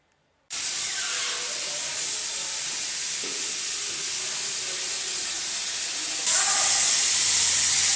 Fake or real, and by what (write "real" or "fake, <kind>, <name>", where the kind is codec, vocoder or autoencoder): real